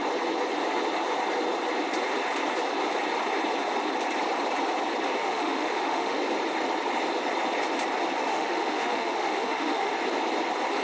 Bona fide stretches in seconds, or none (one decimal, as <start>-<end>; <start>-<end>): 0.0-5.2; 6.2-8.3; 9.9-10.8